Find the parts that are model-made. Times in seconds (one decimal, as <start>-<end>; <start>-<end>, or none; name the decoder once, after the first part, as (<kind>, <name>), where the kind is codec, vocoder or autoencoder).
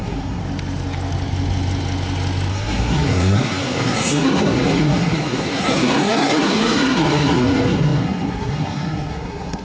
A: 0.0-0.4 (codec, SNAC); 2.5-9.6